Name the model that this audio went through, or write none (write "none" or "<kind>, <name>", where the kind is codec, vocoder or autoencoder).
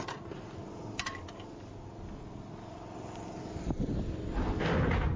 none